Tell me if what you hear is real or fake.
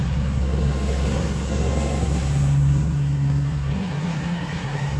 fake